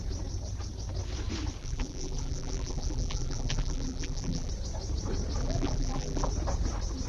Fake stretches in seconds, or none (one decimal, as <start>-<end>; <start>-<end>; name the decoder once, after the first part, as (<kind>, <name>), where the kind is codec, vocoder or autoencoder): 1.6-4.5 (vocoder, BigVGAN v2); 5.4-6.3